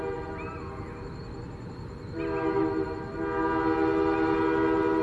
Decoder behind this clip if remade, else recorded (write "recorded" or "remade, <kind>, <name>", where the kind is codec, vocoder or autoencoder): recorded